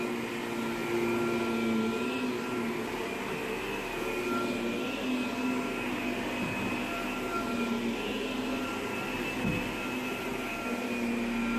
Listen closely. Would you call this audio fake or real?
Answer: real